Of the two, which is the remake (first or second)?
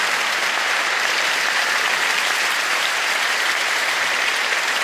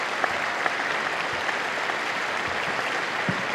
first